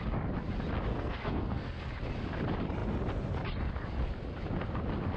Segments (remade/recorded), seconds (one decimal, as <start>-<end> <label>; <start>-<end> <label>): 0.0-0.9 recorded; 0.9-1.9 remade; 1.9-5.2 recorded